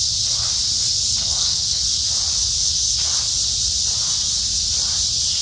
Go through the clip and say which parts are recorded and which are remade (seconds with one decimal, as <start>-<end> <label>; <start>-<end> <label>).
0.0-1.2 recorded; 1.2-1.8 remade; 1.8-5.4 recorded